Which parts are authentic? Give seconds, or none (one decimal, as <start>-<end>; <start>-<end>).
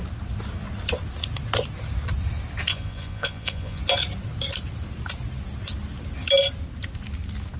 0.0-2.7; 3.8-7.6